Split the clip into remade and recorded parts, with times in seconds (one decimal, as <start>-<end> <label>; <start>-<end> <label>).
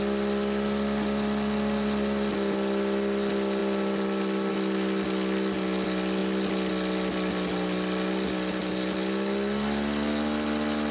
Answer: 0.0-10.9 recorded